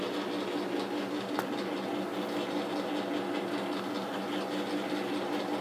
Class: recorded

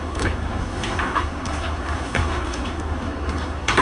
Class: remade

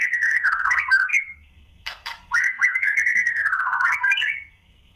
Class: remade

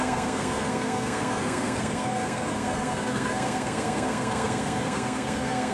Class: remade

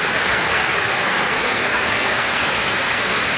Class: remade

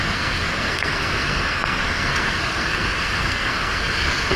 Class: remade